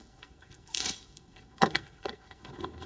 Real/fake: fake